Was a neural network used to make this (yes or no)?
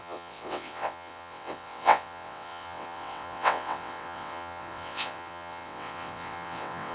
yes